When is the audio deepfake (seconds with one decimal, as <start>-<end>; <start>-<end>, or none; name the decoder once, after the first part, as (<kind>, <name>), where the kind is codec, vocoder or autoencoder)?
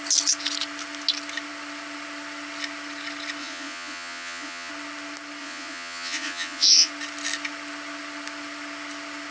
3.4-4.7 (vocoder, Vocos); 5.4-6.9